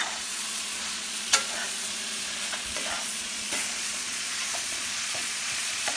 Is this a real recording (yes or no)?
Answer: no